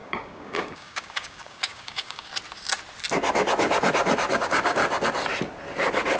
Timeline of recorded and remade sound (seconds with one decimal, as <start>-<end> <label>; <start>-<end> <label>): 0.0-2.3 remade; 2.3-4.3 recorded; 4.3-4.8 remade; 4.8-6.2 recorded